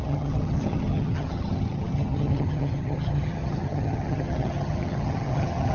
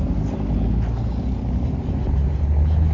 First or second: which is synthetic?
first